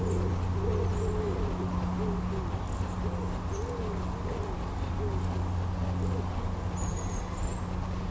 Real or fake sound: real